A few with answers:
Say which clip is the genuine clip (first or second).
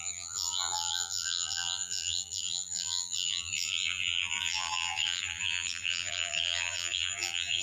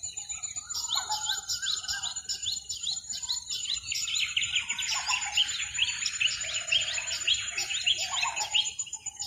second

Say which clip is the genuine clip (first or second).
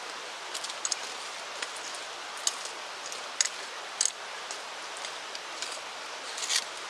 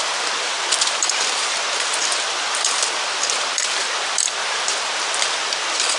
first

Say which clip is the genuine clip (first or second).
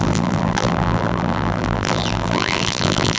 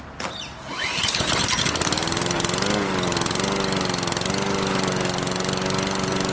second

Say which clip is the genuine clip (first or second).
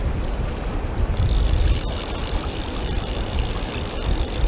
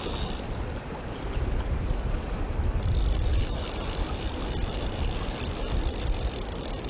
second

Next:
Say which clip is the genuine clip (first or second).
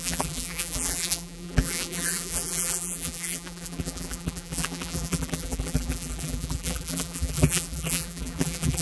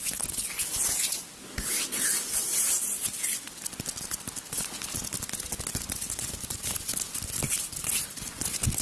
second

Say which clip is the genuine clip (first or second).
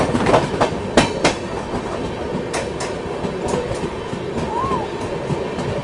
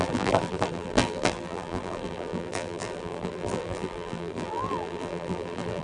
first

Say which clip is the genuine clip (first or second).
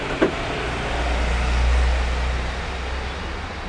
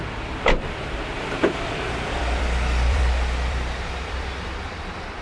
first